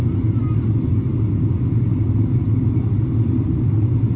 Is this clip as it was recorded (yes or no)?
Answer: yes